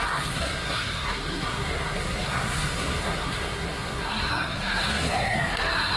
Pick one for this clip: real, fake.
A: fake